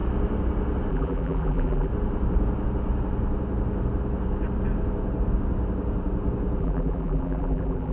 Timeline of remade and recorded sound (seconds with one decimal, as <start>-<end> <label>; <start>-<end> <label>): 0.0-0.9 recorded; 0.9-1.9 remade; 1.9-6.6 recorded; 6.6-7.9 remade